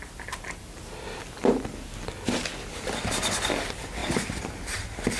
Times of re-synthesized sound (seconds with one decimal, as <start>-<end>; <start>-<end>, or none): 4.0-4.8